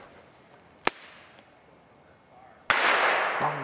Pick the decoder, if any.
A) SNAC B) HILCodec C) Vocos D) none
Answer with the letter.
D